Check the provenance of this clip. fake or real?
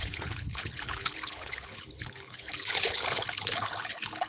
fake